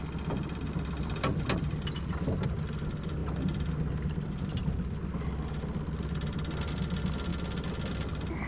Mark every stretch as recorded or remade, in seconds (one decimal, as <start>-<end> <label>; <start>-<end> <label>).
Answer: 0.0-8.5 recorded